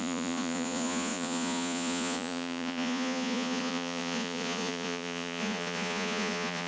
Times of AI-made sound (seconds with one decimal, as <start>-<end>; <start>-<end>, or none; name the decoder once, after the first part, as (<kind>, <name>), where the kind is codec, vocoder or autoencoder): 0.0-6.7 (vocoder, Vocos)

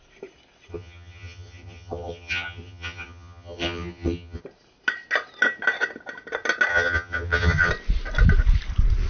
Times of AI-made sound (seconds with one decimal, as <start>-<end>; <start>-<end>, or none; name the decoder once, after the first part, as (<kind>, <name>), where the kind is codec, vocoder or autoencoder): 0.7-4.4 (vocoder, HiFi-GAN); 6.7-7.7

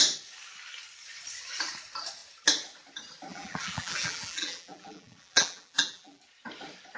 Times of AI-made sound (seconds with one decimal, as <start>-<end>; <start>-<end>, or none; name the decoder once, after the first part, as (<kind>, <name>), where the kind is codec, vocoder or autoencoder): 3.3-6.2 (vocoder, BigVGAN v2)

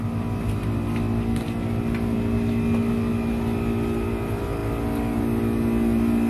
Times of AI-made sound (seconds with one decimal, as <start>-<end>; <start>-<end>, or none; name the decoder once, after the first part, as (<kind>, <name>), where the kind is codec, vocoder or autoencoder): none